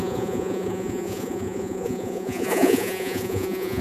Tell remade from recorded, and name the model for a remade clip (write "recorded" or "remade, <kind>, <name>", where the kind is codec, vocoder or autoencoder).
remade, vocoder, Vocos